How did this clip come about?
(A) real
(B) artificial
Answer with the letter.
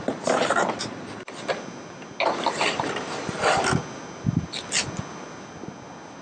A